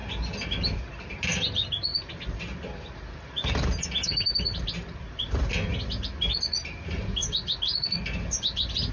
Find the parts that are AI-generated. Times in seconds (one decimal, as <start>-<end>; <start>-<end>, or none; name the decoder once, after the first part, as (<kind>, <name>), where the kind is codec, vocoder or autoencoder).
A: none